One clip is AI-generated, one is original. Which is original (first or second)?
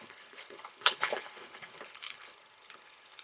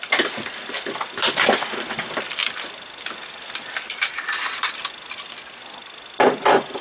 second